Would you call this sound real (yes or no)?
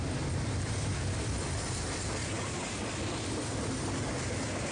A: yes